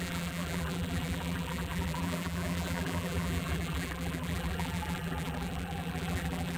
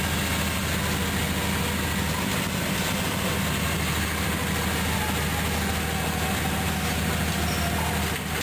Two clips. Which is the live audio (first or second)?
second